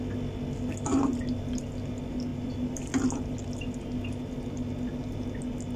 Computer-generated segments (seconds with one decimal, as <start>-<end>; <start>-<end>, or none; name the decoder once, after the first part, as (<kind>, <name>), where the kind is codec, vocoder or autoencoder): 2.3-2.9 (vocoder, BigVGAN v2)